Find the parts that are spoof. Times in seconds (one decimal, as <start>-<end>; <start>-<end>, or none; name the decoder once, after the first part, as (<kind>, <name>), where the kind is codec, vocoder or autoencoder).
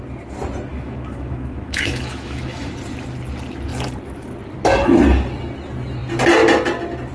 0.7-2.7 (autoencoder, DAC-VAE)